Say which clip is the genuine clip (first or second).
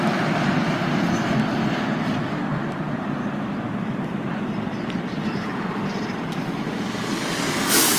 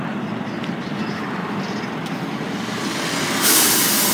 second